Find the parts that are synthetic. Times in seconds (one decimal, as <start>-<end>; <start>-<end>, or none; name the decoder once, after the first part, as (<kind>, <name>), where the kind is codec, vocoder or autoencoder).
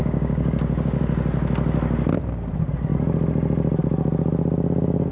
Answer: 0.0-1.0 (codec, DAC)